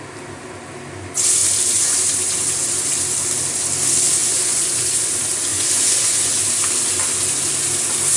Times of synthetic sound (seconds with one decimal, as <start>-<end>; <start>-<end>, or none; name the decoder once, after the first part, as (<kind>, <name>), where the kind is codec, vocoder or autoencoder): 4.2-5.1 (vocoder, Vocos); 5.5-6.3